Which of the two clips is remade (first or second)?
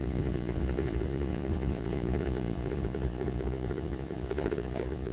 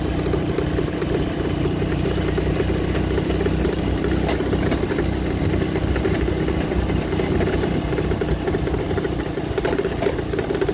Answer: first